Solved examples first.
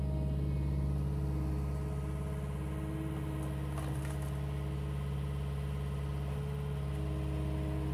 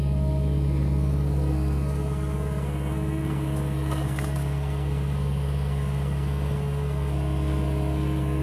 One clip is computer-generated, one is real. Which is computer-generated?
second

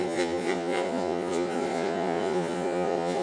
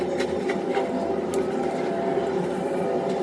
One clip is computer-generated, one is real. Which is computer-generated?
first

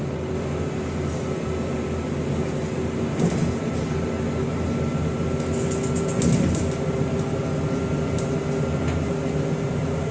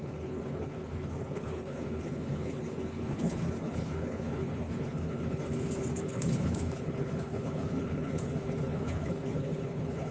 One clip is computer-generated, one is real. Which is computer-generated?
second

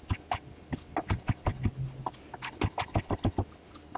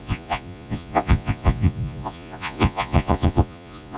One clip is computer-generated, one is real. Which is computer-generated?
second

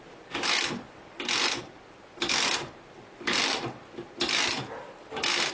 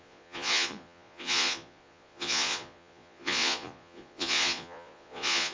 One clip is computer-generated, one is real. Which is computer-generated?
second